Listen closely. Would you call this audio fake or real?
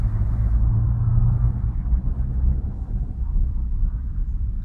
real